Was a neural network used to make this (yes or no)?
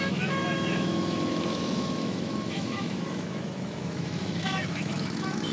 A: yes